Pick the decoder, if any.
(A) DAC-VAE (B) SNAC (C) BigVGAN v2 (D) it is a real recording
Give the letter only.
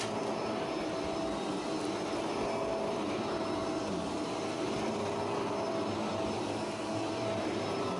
D